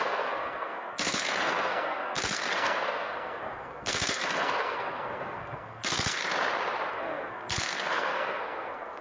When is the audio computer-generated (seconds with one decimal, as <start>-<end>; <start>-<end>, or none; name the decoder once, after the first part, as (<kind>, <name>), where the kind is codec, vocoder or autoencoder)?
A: 0.0-6.2 (codec, SNAC); 6.9-9.0